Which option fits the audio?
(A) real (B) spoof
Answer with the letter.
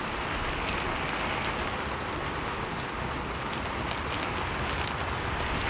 A